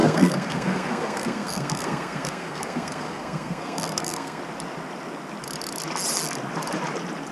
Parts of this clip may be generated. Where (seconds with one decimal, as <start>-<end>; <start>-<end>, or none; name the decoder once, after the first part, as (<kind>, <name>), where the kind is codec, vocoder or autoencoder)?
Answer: 0.0-4.4 (codec, SNAC)